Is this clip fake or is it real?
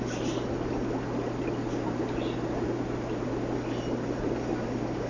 real